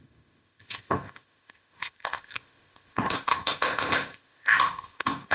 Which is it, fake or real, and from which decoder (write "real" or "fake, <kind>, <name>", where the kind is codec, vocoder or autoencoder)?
fake, codec, ZipCodec